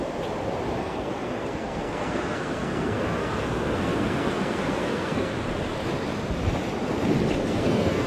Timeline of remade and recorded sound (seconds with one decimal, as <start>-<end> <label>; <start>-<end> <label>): 0.0-0.8 recorded; 0.8-5.3 remade; 5.3-7.4 recorded; 7.4-8.1 remade